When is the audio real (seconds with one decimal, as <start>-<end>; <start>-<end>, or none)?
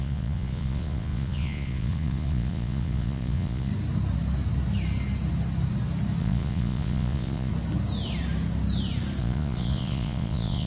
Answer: 3.7-6.2; 7.5-9.2